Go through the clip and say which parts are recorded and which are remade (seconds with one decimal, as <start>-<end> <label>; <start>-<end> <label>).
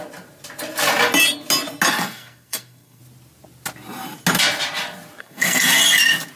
0.0-1.9 recorded; 1.9-3.0 remade; 3.0-5.2 recorded; 5.2-5.8 remade; 5.8-6.4 recorded